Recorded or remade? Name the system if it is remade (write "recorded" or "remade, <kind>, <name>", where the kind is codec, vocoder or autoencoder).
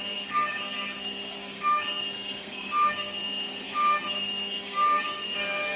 remade, codec, SNAC